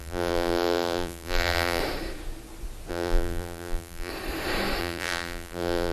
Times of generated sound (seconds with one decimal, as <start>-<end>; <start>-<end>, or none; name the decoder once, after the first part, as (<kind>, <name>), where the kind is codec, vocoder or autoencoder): 0.0-1.8 (vocoder, BigVGAN v2); 2.9-4.1; 4.8-5.9